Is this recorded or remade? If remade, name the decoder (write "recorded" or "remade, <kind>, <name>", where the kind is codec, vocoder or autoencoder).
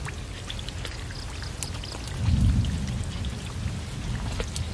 recorded